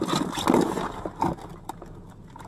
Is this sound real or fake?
real